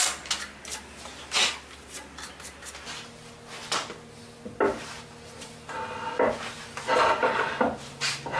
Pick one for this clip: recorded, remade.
recorded